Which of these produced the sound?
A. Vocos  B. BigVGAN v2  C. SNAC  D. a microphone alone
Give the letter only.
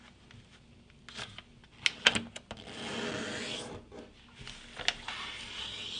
D